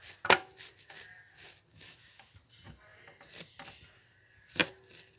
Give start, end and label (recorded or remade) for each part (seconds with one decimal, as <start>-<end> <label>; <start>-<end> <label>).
0.0-1.7 recorded; 1.7-2.3 remade; 2.3-5.2 recorded